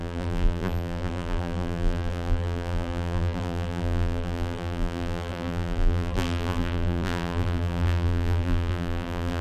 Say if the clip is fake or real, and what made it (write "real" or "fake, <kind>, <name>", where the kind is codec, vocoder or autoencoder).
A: fake, vocoder, BigVGAN v2